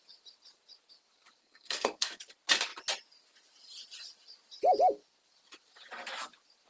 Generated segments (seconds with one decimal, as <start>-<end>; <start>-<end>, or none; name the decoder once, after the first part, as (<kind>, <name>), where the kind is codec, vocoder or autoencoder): 1.4-2.2 (codec, SNAC)